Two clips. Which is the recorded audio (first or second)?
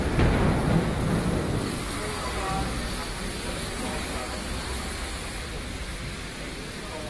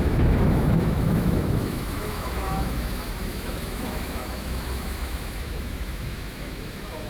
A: first